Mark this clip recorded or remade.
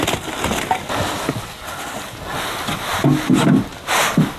recorded